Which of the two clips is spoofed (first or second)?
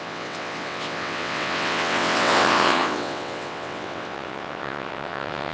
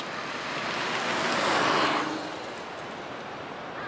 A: first